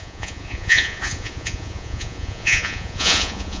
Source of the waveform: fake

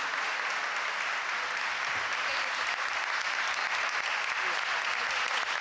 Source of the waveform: real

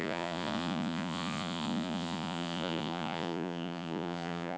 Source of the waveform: fake